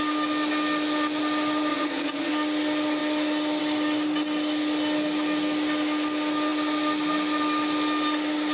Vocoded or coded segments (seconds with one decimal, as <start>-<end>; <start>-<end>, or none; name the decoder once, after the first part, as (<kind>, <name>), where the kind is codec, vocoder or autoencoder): 1.7-2.3 (vocoder, Vocos)